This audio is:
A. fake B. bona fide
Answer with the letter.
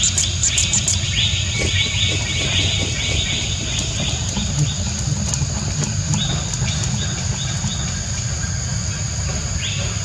B